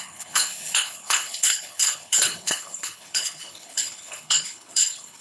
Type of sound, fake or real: fake